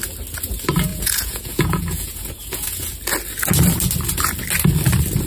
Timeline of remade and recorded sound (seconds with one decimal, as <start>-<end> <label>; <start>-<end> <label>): 0.0-0.9 recorded; 0.9-2.9 remade; 2.9-5.3 recorded